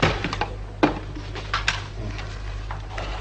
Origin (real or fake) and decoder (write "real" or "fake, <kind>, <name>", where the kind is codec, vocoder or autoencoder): real